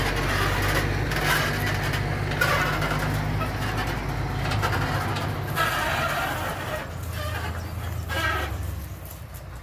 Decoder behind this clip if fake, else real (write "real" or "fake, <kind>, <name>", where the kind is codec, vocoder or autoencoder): real